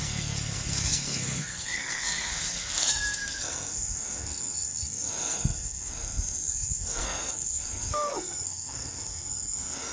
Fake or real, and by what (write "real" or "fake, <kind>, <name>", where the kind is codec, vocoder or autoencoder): fake, codec, SNAC